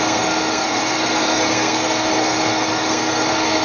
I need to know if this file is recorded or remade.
remade